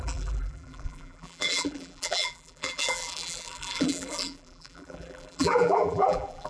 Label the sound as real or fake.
fake